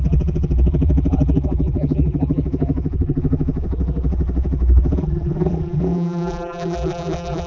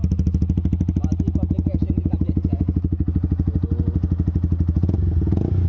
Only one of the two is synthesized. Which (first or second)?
first